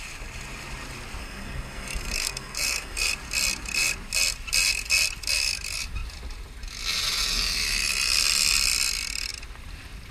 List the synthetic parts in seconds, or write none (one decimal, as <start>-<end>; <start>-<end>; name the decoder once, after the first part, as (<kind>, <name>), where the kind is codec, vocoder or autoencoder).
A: 1.2-3.1 (codec, SNAC)